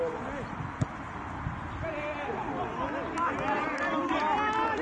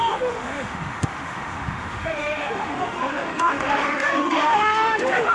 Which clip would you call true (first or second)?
first